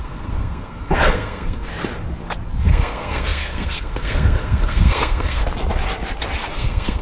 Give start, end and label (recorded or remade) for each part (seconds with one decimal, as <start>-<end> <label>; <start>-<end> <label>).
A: 0.0-1.7 remade; 1.7-2.6 recorded; 2.6-5.4 remade; 5.4-6.5 recorded; 6.5-7.0 remade